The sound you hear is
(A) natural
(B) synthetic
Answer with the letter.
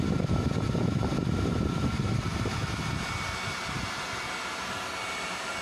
A